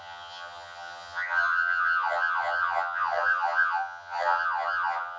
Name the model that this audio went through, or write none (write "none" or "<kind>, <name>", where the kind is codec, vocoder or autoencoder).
vocoder, HiFi-GAN